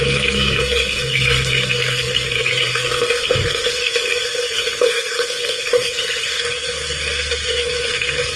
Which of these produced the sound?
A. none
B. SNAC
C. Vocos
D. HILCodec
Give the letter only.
B